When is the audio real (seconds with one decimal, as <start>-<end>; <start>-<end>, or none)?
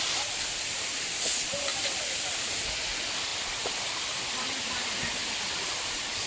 0.0-1.7; 2.6-6.3